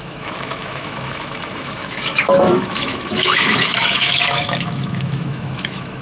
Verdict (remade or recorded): remade